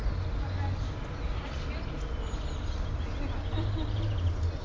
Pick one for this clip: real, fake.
real